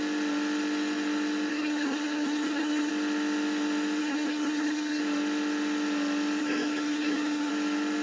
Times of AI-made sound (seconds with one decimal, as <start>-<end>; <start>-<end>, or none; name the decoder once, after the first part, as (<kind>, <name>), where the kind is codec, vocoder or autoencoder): 1.5-2.9 (codec, SNAC); 4.0-5.0; 6.4-7.5